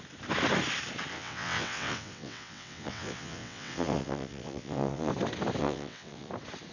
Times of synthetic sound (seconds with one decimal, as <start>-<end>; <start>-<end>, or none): 1.1-5.1; 5.6-6.3